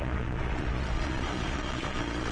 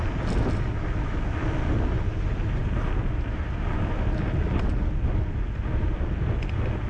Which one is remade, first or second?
first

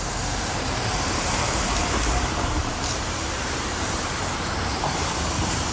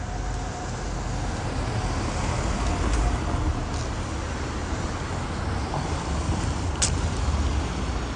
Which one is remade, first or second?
first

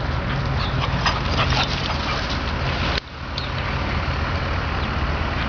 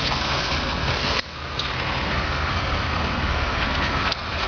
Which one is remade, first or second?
second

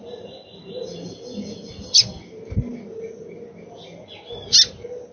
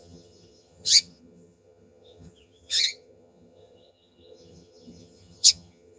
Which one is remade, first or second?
second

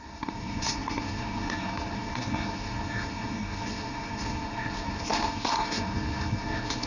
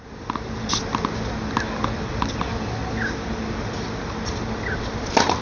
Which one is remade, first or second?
first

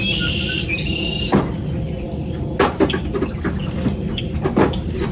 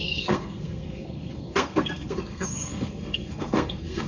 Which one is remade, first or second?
second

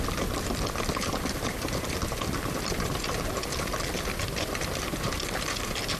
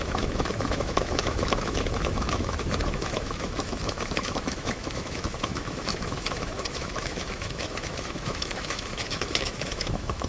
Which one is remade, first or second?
second